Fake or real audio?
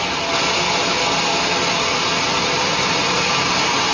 real